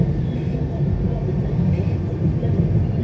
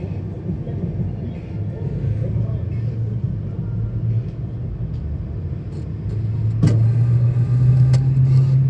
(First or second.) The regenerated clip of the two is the first